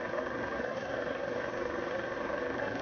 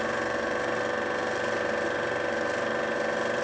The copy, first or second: first